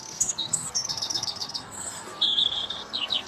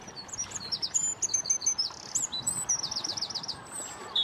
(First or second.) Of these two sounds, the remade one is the first